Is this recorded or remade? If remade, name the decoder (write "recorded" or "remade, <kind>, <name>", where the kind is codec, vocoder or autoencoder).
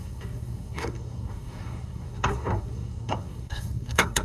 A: remade, codec, SNAC